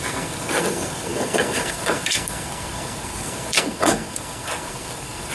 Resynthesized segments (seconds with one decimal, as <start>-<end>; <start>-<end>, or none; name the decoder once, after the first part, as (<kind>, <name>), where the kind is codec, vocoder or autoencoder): 0.0-5.3 (codec, SNAC)